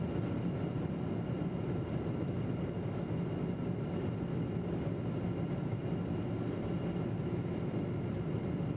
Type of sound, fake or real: real